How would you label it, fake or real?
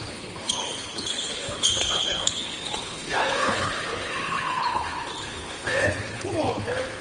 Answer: fake